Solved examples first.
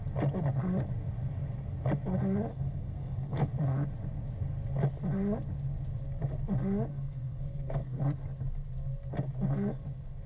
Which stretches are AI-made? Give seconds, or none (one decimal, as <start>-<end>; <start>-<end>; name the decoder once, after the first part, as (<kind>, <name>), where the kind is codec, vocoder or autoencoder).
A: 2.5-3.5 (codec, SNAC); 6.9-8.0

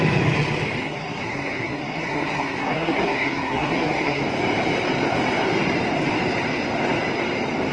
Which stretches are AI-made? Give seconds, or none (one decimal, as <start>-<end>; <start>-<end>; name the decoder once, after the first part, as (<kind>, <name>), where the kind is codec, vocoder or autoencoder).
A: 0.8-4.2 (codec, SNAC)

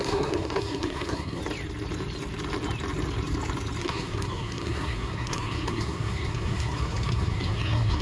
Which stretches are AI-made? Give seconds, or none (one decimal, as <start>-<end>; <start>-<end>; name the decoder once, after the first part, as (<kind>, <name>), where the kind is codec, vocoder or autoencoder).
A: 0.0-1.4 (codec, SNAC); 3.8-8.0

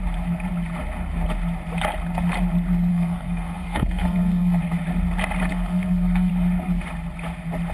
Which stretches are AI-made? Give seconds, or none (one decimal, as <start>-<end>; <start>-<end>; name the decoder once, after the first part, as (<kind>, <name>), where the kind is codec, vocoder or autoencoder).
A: 2.9-4.6 (codec, SNAC); 5.5-6.3